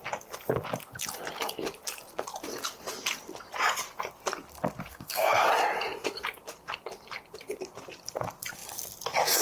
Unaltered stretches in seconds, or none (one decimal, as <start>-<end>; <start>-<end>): 0.0-4.9; 5.5-9.4